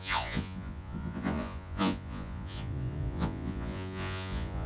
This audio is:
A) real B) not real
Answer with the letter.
B